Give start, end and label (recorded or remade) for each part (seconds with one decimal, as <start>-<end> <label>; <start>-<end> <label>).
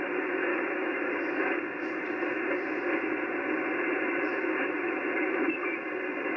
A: 0.0-0.5 recorded; 0.5-1.6 remade; 1.6-6.4 recorded